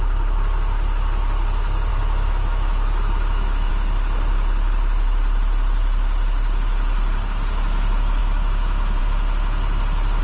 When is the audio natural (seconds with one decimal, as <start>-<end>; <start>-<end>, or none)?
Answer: 0.0-1.9; 3.7-8.2; 9.0-10.2